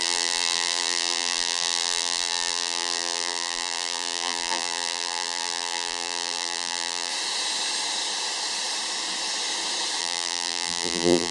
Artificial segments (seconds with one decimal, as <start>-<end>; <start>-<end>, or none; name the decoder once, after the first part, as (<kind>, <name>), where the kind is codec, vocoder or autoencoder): 0.0-7.1 (vocoder, BigVGAN v2); 10.0-11.3